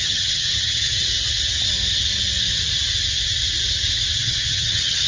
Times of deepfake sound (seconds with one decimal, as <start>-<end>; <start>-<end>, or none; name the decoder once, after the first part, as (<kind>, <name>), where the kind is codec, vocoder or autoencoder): 0.0-1.1 (vocoder, HiFi-GAN); 4.2-5.1